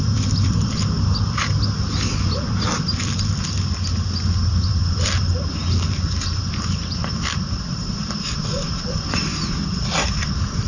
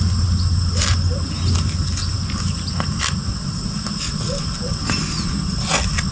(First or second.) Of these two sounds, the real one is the second